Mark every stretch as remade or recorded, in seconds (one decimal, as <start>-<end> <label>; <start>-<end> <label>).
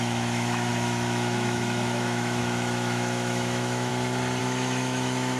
0.0-3.9 remade; 3.9-4.4 recorded; 4.4-5.4 remade